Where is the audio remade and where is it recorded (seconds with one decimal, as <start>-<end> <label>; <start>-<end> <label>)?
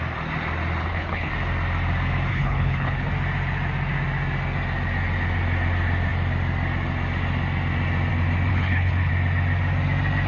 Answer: 0.0-0.8 recorded; 0.8-1.3 remade; 1.3-2.3 recorded; 2.3-3.1 remade; 3.1-8.5 recorded; 8.5-9.1 remade; 9.1-10.3 recorded